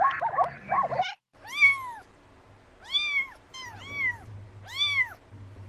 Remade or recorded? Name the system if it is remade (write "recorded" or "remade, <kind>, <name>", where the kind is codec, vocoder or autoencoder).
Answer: recorded